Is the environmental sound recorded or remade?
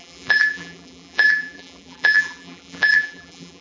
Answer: remade